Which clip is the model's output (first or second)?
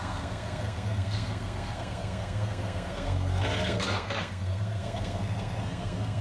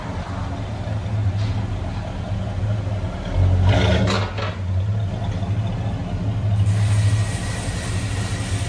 first